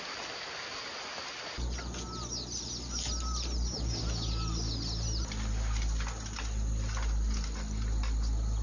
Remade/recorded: recorded